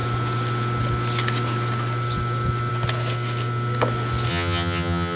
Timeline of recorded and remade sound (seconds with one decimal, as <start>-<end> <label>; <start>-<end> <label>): 0.0-4.3 recorded; 4.3-5.2 remade